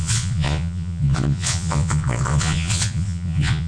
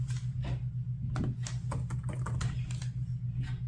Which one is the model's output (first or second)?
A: first